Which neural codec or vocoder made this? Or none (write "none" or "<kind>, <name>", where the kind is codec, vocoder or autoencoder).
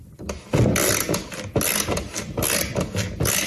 none